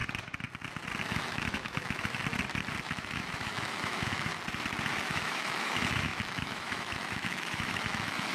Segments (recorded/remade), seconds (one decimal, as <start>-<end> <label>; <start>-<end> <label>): 0.0-1.0 recorded; 1.0-2.2 remade; 2.2-2.8 recorded; 2.8-4.3 remade; 4.3-4.9 recorded; 4.9-8.3 remade